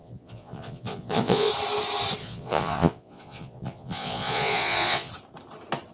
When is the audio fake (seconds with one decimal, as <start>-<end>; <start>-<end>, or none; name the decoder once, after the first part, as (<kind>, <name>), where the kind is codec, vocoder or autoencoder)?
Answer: 0.0-1.5 (vocoder, Vocos); 2.2-5.1